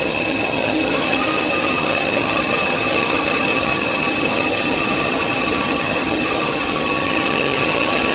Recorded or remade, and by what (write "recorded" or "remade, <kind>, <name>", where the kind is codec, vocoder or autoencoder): remade, vocoder, HiFi-GAN